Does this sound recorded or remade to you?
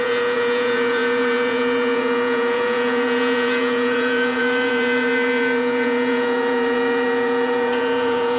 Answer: remade